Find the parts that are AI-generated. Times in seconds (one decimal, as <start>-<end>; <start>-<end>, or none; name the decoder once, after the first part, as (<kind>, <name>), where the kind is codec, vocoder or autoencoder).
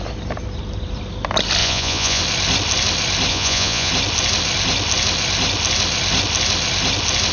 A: 1.6-2.2 (vocoder, Vocos); 3.3-3.9